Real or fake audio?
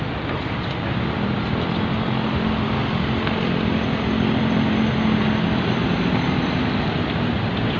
real